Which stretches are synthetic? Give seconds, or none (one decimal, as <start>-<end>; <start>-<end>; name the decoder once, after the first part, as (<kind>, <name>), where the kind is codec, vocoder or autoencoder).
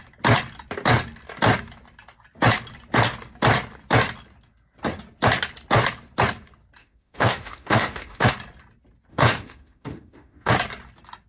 6.8-8.3 (autoencoder, DAC-VAE); 9.1-10.5